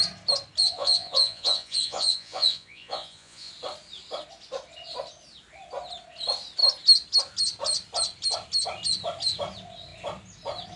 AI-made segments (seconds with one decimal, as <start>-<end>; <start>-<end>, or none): 0.6-3.5